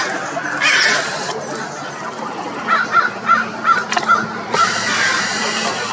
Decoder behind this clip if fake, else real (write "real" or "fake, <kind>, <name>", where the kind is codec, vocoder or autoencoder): real